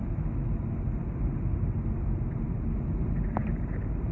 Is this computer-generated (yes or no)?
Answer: no